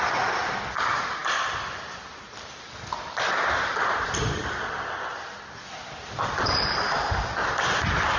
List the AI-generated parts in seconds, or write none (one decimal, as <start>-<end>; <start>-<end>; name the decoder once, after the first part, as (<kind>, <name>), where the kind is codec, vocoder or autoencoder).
none